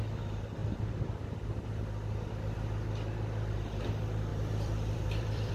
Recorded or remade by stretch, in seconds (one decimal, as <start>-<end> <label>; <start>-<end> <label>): 0.0-4.3 recorded; 4.3-5.5 remade